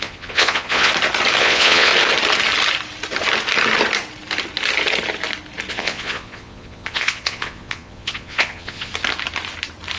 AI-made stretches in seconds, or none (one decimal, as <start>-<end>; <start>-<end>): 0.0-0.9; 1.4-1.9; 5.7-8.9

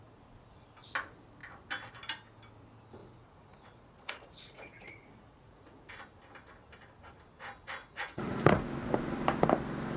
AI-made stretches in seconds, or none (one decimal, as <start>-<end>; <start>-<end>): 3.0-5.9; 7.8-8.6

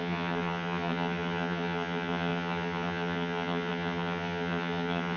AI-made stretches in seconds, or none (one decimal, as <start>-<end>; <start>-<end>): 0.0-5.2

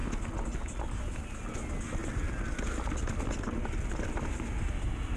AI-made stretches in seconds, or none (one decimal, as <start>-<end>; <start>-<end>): none